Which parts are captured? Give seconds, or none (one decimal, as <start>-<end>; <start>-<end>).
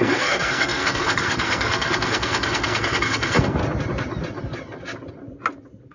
3.6-5.9